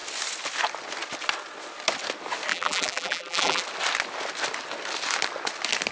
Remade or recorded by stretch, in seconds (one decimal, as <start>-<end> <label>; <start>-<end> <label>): 0.0-2.5 recorded; 2.5-3.6 remade; 3.6-5.9 recorded

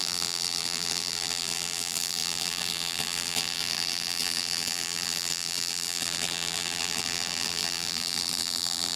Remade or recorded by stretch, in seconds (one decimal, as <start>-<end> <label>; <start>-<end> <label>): 0.0-9.0 remade